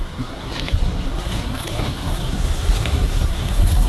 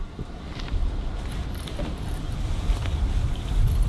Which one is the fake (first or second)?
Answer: first